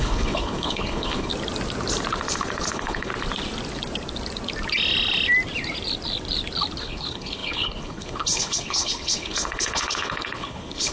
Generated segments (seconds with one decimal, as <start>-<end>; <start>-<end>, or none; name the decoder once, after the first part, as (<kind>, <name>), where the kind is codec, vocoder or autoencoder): 0.0-1.3 (codec, HILCodec); 2.7-3.1; 6.8-10.9